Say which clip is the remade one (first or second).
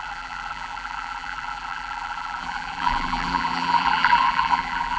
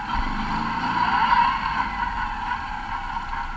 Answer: first